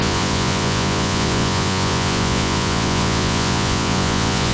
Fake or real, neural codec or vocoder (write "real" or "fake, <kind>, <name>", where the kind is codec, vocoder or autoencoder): fake, vocoder, Vocos